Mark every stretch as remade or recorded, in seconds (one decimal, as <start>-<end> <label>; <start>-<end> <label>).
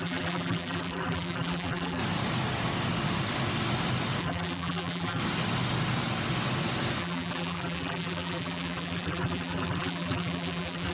0.0-2.0 remade; 2.0-4.2 recorded; 4.2-5.2 remade; 5.2-7.0 recorded; 7.0-10.9 remade